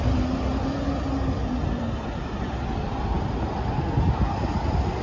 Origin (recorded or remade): recorded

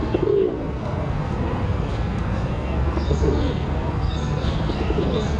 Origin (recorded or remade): remade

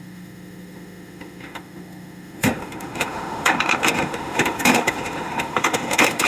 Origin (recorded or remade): remade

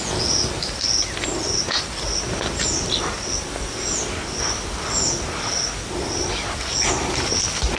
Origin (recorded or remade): recorded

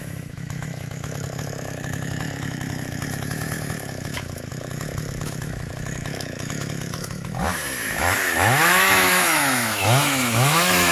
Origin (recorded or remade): remade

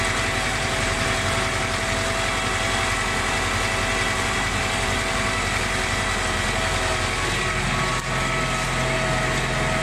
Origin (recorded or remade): recorded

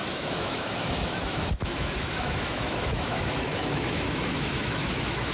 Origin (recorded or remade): remade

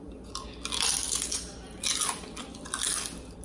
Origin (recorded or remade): recorded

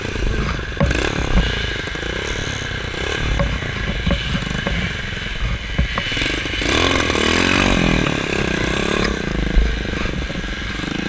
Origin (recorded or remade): recorded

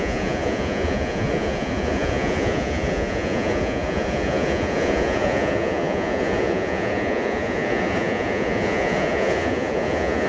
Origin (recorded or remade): remade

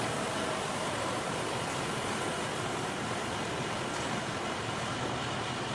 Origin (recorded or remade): remade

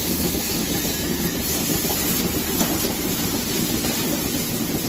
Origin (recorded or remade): recorded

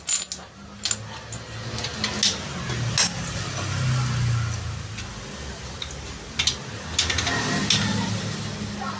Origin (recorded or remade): recorded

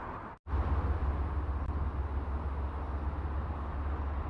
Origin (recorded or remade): recorded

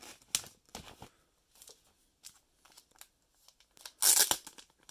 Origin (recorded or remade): recorded